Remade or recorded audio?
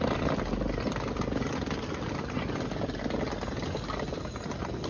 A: recorded